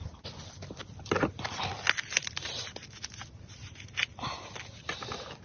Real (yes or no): yes